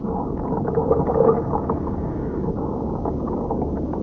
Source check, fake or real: fake